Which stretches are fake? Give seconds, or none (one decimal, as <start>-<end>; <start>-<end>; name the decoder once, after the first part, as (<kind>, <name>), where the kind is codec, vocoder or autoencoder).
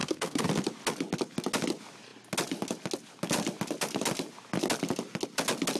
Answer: 0.0-0.5 (codec, SNAC)